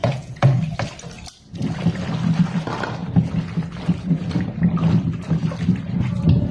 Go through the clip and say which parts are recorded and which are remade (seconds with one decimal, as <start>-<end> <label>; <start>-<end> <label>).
0.0-0.6 remade; 0.6-6.5 recorded